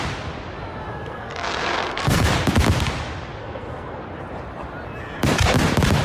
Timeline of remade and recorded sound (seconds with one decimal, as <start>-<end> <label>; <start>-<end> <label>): 0.0-0.9 recorded; 0.9-2.3 remade; 2.3-3.4 recorded; 3.4-4.0 remade; 4.0-6.0 recorded